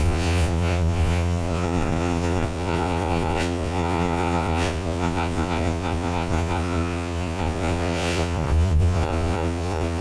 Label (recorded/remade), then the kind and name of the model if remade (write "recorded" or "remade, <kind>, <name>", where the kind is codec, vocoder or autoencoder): remade, vocoder, Vocos